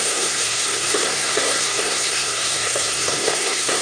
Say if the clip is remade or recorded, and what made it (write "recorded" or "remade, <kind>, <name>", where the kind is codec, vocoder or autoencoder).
remade, codec, SNAC